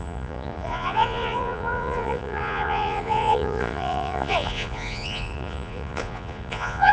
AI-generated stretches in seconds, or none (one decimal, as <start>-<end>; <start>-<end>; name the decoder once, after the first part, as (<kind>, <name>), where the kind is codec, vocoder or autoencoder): 0.0-6.9 (vocoder, Vocos)